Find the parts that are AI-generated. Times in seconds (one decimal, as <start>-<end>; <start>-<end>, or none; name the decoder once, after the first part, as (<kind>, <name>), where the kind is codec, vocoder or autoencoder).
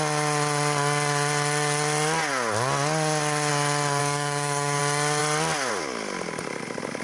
4.0-4.8 (codec, DAC)